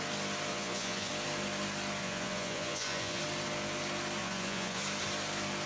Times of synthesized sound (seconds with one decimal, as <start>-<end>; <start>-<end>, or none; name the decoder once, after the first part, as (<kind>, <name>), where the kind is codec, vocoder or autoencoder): 0.5-1.1 (vocoder, Vocos); 2.0-3.2; 4.2-4.8